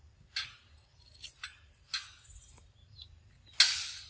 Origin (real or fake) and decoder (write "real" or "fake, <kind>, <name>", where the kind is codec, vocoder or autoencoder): real